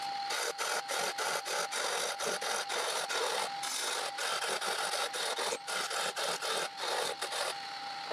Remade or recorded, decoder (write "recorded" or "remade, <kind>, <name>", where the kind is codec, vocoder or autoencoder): recorded